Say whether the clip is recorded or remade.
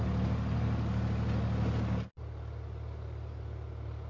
recorded